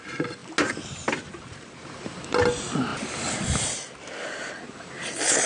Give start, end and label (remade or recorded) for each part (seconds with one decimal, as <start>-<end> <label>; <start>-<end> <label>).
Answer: 0.0-5.5 recorded